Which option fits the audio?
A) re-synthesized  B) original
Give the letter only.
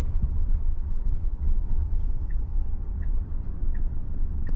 A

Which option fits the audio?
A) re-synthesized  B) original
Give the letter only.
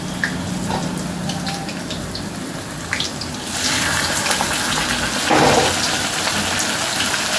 B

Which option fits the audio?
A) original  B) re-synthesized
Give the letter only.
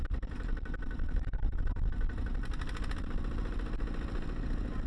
A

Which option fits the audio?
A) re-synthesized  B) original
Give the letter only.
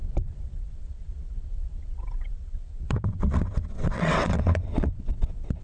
A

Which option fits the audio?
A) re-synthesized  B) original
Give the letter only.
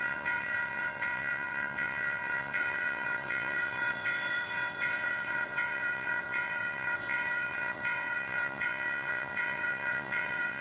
A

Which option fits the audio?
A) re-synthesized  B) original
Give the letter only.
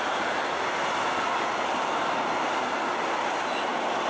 B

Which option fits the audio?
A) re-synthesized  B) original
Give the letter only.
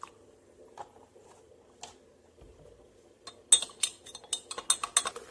B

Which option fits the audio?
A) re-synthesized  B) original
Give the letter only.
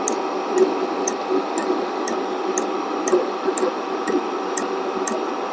B